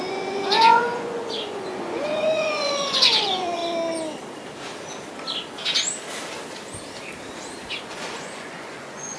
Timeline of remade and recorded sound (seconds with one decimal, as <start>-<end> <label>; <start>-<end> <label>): 0.0-3.6 remade; 3.6-7.8 recorded; 7.8-9.2 remade